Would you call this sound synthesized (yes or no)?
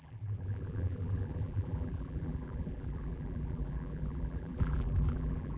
yes